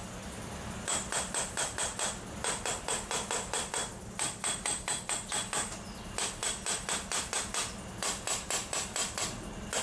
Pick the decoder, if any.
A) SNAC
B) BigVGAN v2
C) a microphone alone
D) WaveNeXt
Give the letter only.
C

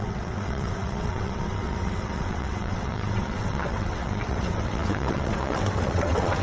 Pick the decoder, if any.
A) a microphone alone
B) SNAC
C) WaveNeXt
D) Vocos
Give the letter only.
C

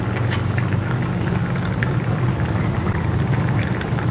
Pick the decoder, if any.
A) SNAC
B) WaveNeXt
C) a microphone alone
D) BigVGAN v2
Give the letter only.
C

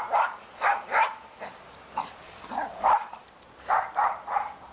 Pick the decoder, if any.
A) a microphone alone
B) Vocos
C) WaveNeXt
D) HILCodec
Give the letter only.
A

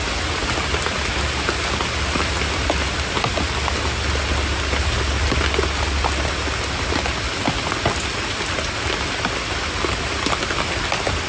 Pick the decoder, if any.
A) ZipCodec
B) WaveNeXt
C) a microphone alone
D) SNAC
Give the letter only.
C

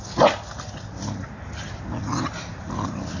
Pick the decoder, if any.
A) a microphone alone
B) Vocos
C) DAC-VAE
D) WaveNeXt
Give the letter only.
A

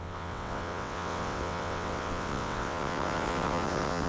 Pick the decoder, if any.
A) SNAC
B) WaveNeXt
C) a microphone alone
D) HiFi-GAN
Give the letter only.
B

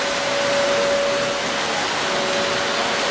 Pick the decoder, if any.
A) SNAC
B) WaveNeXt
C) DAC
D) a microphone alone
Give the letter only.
D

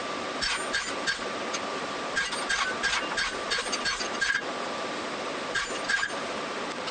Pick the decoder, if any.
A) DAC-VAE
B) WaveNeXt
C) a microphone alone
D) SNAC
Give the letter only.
C